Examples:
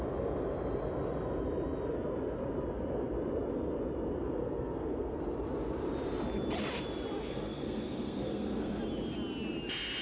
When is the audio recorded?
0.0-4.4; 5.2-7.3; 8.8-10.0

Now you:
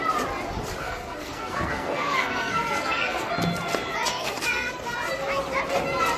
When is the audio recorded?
0.0-0.8; 3.3-4.1; 4.7-6.2

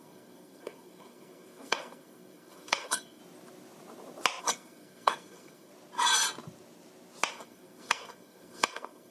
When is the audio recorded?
3.2-4.4; 5.7-7.3

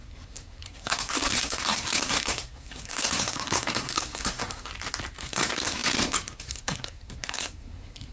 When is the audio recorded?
4.7-5.2

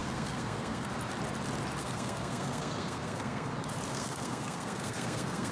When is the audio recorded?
0.9-1.8; 3.5-3.9

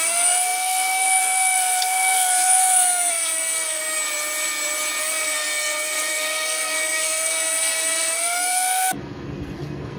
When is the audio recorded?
3.8-5.0